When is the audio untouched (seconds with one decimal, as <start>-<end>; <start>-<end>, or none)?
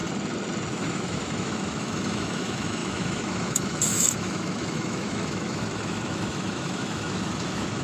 0.0-0.7